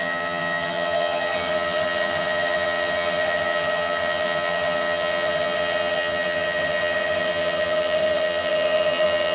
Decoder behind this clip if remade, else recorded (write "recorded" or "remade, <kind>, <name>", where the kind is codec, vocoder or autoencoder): remade, vocoder, HiFi-GAN